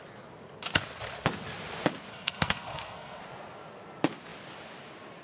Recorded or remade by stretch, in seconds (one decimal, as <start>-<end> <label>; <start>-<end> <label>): 0.0-2.1 recorded; 2.1-3.2 remade; 3.2-5.2 recorded